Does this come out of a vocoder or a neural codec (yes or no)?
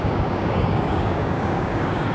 yes